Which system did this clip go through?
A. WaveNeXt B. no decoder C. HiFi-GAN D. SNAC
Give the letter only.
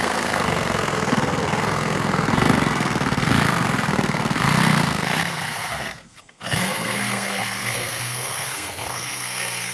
D